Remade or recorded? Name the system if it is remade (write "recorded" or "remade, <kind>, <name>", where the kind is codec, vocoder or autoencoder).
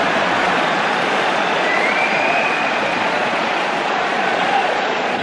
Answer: remade, vocoder, Vocos